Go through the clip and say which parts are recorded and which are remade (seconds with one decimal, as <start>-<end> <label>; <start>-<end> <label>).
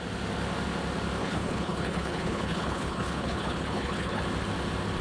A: 0.0-1.2 recorded; 1.2-4.2 remade; 4.2-5.0 recorded